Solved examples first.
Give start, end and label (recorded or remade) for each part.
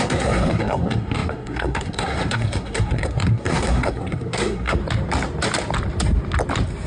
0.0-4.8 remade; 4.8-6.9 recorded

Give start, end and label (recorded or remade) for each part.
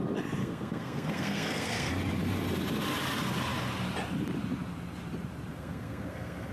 0.0-0.4 recorded; 0.4-1.9 remade; 1.9-5.5 recorded; 5.5-6.5 remade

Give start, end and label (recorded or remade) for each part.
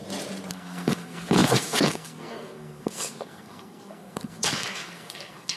0.0-0.5 recorded; 0.5-5.6 remade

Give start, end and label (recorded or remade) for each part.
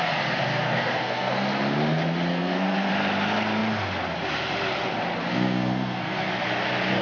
0.0-0.5 recorded; 0.5-1.3 remade; 1.3-2.3 recorded; 2.3-2.9 remade; 2.9-5.3 recorded; 5.3-6.3 remade; 6.3-7.0 recorded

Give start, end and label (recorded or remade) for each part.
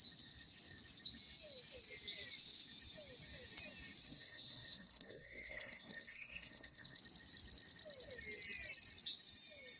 0.0-4.0 recorded; 4.0-7.0 remade; 7.0-9.8 recorded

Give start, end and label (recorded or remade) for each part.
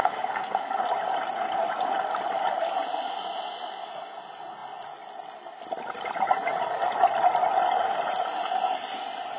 0.0-0.8 remade; 0.8-9.4 recorded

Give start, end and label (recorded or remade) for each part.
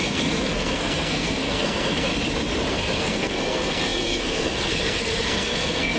0.0-2.1 remade; 2.1-2.7 recorded; 2.7-6.0 remade